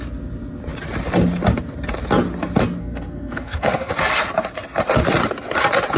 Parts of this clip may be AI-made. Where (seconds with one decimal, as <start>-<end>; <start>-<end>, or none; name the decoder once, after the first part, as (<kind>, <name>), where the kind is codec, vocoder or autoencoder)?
2.8-3.9 (codec, SNAC)